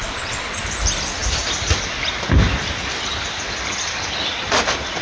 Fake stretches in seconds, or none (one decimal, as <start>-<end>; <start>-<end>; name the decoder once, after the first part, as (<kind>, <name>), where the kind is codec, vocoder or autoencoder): 0.0-0.6 (vocoder, WaveNeXt)